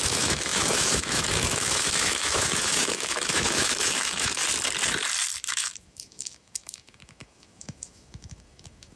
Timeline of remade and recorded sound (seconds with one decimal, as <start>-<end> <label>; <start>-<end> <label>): 0.0-4.4 remade; 4.4-5.5 recorded; 5.5-9.0 remade